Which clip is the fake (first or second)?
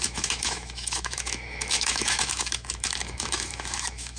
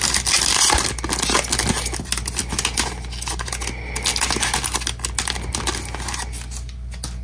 first